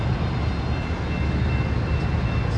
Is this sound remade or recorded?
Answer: recorded